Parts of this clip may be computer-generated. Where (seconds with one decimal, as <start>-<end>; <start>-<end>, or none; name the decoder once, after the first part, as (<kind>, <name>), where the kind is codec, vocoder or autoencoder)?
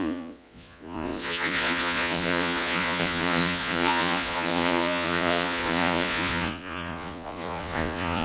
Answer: 0.0-8.2 (vocoder, Vocos)